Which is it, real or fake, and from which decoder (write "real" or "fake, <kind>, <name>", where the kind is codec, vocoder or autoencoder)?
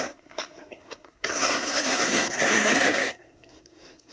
fake, codec, SNAC